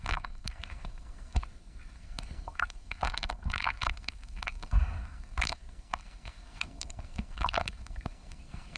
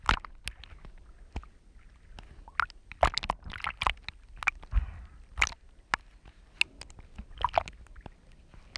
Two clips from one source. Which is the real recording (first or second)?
second